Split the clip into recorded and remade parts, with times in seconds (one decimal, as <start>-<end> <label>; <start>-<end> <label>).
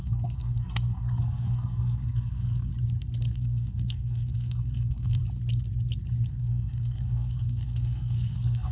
0.0-2.7 remade; 2.7-3.3 recorded; 3.3-5.2 remade; 5.2-6.3 recorded; 6.3-8.7 remade